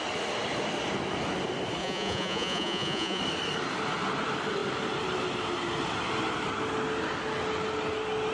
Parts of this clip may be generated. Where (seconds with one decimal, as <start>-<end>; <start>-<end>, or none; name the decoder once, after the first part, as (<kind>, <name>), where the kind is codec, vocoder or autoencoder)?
1.8-3.2 (vocoder, Vocos)